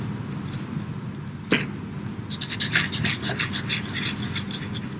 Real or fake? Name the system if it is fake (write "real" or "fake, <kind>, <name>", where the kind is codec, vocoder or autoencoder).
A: real